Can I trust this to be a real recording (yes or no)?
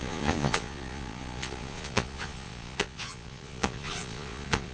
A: no